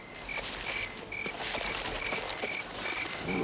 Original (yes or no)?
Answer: yes